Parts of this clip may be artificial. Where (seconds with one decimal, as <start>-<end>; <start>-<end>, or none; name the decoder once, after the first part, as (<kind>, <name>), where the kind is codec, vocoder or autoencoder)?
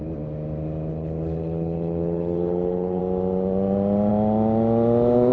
0.9-3.0 (codec, HILCodec)